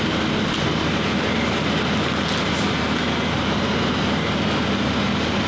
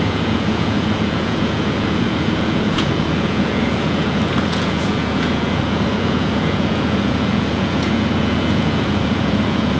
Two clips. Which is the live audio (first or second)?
first